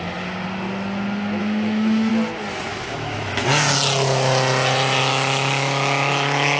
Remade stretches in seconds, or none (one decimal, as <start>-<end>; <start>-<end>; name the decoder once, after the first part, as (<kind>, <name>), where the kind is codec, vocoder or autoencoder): 1.4-2.1 (autoencoder, DAC-VAE); 2.7-3.4; 5.0-6.6